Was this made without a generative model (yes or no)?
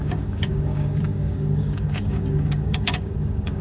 no